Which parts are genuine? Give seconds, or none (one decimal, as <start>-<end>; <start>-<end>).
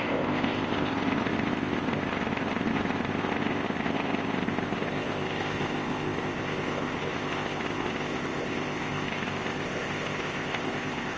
none